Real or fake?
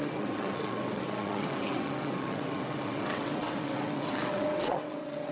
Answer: fake